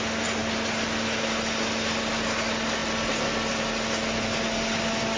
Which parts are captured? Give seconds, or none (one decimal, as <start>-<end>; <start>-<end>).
0.0-5.2